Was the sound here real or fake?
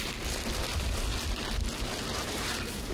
real